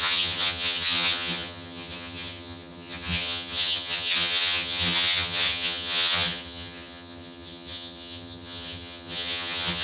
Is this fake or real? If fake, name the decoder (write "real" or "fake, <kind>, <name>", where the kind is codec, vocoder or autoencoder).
fake, vocoder, HiFi-GAN